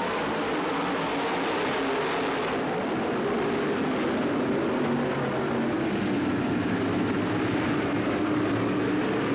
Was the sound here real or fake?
real